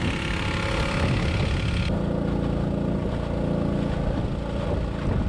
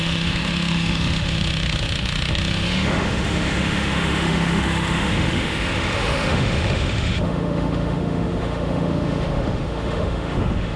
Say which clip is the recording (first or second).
first